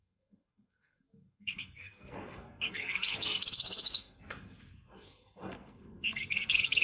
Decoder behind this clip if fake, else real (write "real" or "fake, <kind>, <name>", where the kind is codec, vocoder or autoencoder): fake, codec, SNAC